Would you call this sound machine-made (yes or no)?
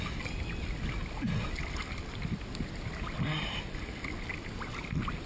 no